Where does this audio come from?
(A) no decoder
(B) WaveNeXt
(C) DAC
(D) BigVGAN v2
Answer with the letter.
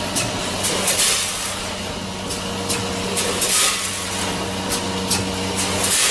A